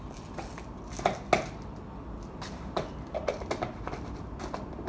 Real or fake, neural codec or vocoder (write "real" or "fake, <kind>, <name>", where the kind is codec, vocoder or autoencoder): real